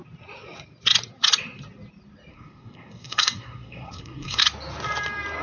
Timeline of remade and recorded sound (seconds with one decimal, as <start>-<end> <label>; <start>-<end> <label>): 0.0-2.3 recorded; 2.3-4.4 remade; 4.4-5.4 recorded